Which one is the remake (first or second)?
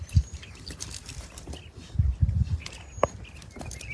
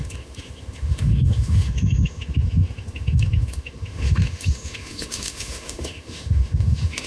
second